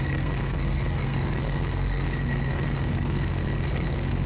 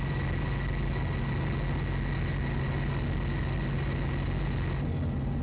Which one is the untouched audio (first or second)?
second